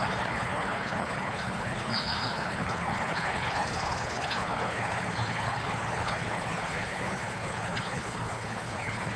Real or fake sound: fake